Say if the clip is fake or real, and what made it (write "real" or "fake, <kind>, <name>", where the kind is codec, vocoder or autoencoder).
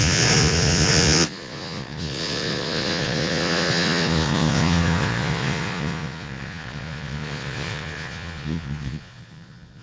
fake, vocoder, Vocos